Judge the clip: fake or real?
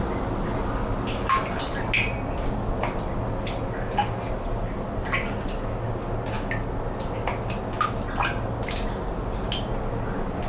real